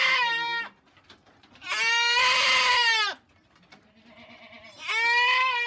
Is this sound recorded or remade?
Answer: recorded